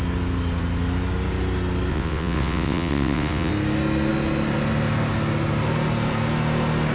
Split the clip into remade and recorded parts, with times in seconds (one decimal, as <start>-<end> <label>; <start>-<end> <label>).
0.0-1.9 recorded; 1.9-3.5 remade; 3.5-6.9 recorded